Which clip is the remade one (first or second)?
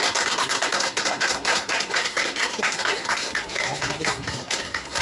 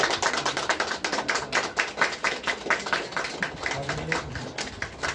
first